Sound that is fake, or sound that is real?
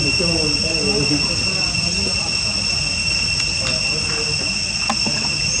real